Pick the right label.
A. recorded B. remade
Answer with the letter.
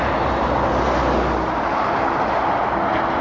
A